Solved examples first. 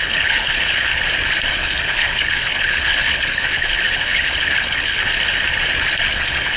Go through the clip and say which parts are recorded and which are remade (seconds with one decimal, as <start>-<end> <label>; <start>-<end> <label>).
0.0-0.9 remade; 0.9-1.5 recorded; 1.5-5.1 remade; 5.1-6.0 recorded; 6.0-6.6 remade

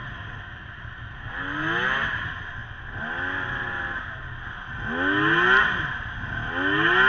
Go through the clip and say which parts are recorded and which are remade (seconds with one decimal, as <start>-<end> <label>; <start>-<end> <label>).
0.0-1.3 remade; 1.3-7.1 recorded

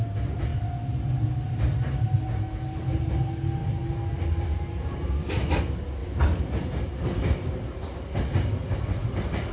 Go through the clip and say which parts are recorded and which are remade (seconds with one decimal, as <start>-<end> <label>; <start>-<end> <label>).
0.0-9.5 recorded

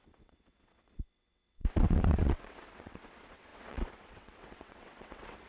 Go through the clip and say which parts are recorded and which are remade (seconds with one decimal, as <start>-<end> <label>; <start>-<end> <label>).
0.0-5.5 remade

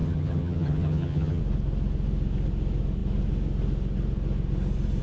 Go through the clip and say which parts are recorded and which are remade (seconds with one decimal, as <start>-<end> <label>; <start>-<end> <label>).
0.0-1.4 remade; 1.4-5.0 recorded